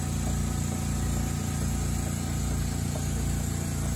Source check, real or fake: real